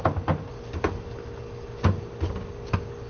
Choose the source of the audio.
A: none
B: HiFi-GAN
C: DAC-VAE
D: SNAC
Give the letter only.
A